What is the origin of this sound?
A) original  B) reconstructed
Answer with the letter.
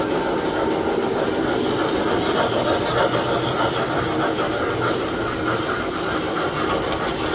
A